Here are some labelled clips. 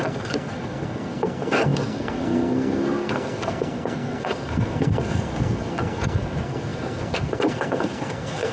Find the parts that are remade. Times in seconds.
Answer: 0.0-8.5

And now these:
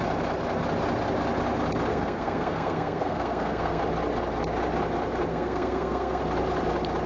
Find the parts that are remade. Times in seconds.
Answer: 1.9-3.8; 5.3-6.2

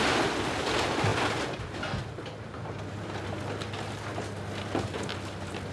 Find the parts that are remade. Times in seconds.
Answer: none

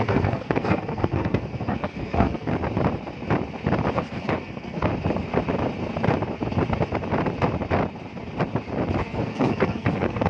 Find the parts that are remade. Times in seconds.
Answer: 0.0-2.5; 3.9-4.9; 9.0-10.3

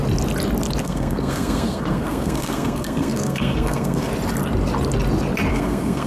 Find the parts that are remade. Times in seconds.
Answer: 0.8-4.1; 5.5-6.1

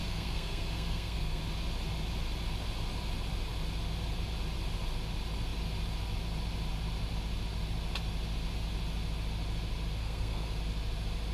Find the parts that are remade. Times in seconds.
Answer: 0.0-1.4; 10.0-10.6

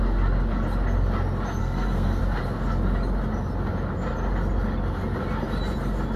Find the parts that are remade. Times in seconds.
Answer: 1.6-2.2